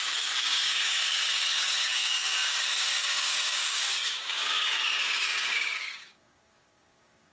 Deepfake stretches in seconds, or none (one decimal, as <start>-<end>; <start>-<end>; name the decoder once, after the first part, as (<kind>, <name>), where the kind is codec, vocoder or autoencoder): 0.0-7.3 (codec, DAC)